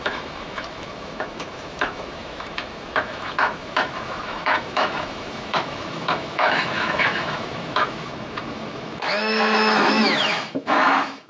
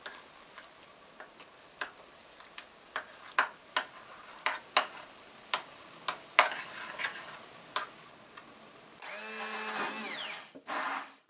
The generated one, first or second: first